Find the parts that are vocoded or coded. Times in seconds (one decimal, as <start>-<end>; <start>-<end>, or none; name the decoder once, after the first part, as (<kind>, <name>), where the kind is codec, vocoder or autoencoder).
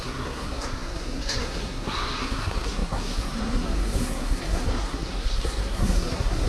0.0-6.5 (codec, SNAC)